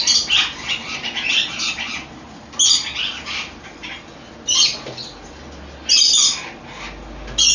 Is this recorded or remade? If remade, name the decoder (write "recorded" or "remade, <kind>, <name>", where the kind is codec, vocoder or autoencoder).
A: recorded